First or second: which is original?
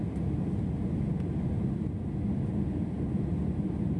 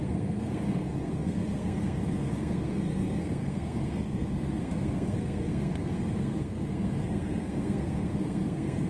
first